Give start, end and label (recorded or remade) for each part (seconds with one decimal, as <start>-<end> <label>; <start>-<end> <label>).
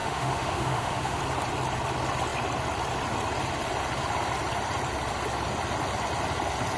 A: 0.0-1.2 remade; 1.2-6.8 recorded